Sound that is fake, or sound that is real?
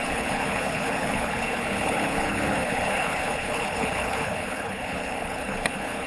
fake